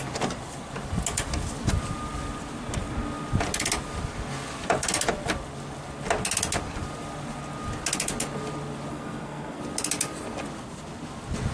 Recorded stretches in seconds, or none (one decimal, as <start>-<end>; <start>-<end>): 0.0-8.9; 9.6-11.5

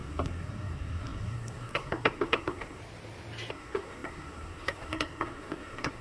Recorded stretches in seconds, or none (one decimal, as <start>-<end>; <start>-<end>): 2.8-3.5

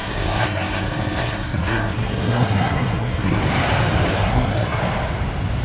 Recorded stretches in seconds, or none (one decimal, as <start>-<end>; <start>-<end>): 3.4-4.1; 4.8-5.6

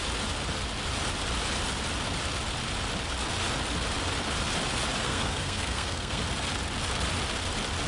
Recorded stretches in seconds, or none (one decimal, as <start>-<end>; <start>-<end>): 0.0-5.0; 6.2-7.9

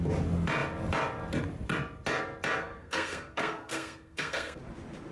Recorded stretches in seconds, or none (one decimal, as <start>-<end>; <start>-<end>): 0.0-2.6; 4.6-5.1

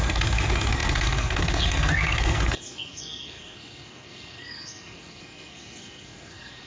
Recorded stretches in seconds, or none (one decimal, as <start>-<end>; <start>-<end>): none

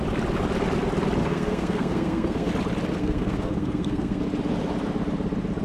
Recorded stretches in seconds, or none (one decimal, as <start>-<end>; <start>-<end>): 0.0-1.2; 2.5-2.9; 4.2-5.6